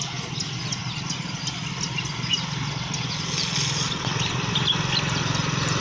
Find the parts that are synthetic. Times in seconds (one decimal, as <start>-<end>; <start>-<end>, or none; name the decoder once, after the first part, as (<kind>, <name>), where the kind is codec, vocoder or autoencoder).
none